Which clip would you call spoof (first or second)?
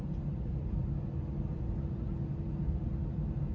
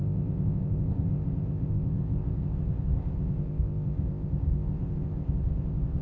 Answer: second